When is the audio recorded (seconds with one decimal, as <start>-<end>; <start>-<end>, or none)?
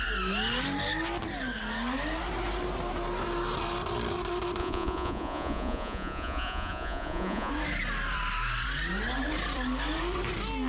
0.0-4.6; 7.5-10.7